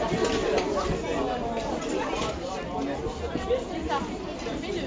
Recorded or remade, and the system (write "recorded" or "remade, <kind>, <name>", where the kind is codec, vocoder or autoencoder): recorded